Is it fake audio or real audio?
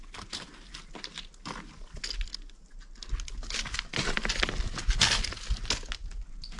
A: real